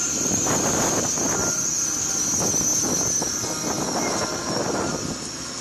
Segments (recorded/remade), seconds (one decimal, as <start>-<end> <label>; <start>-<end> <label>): 0.0-5.6 recorded